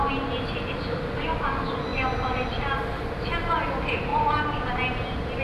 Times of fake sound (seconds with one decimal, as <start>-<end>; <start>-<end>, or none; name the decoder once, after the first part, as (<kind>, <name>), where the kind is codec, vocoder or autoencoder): none